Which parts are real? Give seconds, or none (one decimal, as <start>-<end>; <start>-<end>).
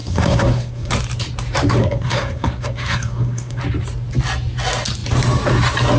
0.9-1.8; 3.6-6.0